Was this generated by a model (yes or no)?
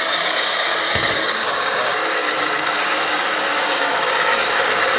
yes